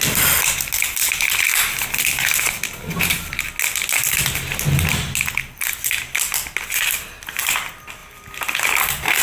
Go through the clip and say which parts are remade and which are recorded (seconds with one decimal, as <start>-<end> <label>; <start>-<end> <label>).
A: 0.0-8.0 recorded; 8.0-8.6 remade; 8.6-9.2 recorded